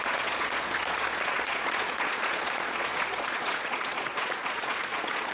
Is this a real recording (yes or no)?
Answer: no